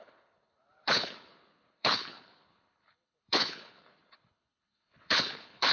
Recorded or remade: remade